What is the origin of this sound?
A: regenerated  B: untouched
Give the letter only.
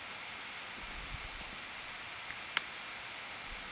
B